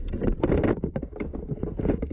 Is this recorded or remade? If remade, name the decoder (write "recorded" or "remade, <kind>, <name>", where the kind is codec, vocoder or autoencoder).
recorded